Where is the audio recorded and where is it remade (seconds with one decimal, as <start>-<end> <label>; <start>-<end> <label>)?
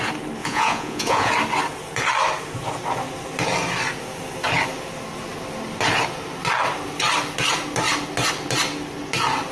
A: 0.0-0.4 recorded; 0.4-1.3 remade; 1.3-9.5 recorded